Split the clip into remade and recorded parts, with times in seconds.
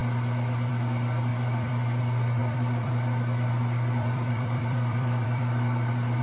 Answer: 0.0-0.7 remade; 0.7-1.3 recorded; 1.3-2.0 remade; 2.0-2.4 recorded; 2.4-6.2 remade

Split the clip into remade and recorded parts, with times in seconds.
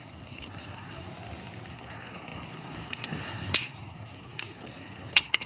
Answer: 0.0-1.1 remade; 1.1-1.7 recorded; 1.7-5.5 remade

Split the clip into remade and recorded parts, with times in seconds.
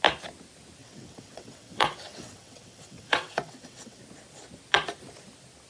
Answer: 0.0-0.8 recorded; 0.8-4.0 remade; 4.0-5.7 recorded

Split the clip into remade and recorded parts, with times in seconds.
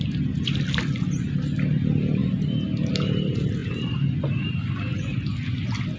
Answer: 0.0-6.0 recorded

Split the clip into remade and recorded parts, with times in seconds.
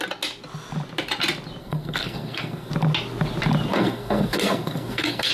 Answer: 0.0-1.6 recorded; 1.6-2.7 remade; 2.7-3.7 recorded; 3.7-5.3 remade